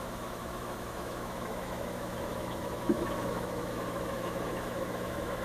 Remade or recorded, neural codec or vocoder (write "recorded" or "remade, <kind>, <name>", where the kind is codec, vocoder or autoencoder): remade, autoencoder, DAC-VAE